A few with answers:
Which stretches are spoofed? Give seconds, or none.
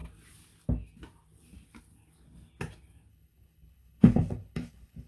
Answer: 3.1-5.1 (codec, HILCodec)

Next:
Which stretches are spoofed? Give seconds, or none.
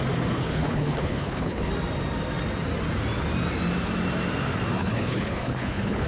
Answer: 0.4-1.7 (codec, HILCodec); 4.8-6.1